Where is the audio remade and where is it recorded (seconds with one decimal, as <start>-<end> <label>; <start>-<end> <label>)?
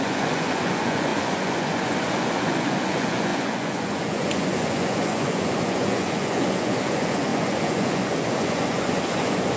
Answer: 0.0-9.6 remade